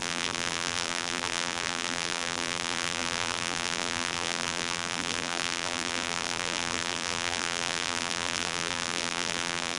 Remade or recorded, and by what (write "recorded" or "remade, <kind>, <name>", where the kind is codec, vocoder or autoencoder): remade, vocoder, BigVGAN v2